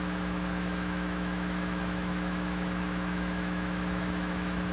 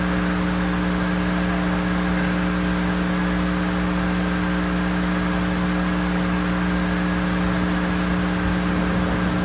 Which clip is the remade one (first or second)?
first